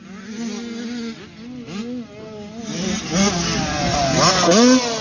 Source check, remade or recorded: recorded